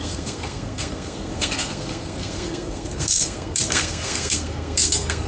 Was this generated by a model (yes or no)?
yes